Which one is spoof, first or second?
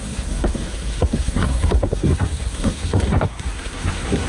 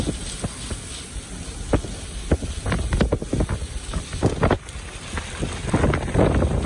first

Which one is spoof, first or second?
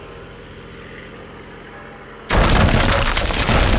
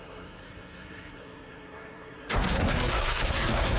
second